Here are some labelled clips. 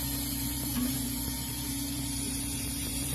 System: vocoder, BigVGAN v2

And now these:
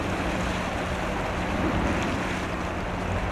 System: none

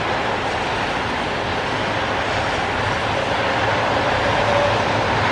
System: none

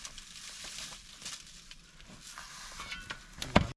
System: none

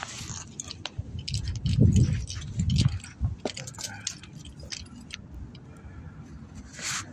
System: none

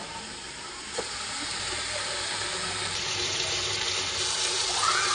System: vocoder, BigVGAN v2